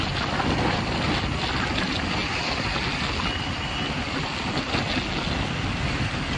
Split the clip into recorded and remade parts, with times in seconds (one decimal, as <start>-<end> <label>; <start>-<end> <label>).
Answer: 0.0-6.4 recorded